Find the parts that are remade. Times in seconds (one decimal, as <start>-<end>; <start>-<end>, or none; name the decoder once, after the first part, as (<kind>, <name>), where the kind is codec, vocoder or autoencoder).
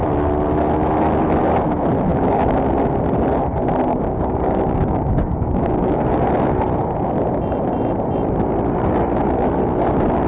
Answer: 2.1-2.7 (codec, DAC); 3.9-6.0